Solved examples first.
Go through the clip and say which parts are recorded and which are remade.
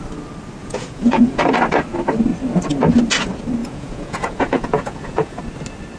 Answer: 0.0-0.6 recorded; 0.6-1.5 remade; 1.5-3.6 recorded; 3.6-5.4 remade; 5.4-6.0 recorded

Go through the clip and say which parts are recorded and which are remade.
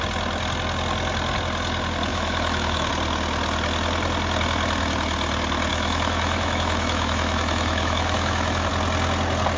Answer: 0.0-2.1 recorded; 2.1-2.9 remade; 2.9-5.7 recorded; 5.7-8.7 remade; 8.7-9.6 recorded